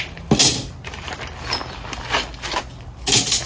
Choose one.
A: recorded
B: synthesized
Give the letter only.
A